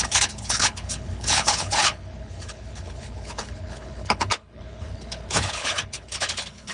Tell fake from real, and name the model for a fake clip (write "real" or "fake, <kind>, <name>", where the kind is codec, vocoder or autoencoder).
fake, codec, HILCodec